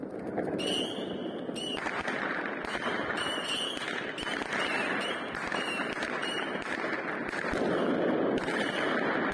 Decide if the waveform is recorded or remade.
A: recorded